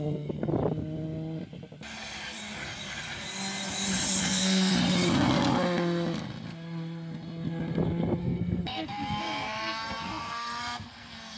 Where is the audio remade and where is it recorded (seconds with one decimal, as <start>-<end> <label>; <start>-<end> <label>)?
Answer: 0.0-0.5 remade; 0.5-4.2 recorded; 4.2-4.7 remade; 4.7-8.2 recorded; 8.2-11.4 remade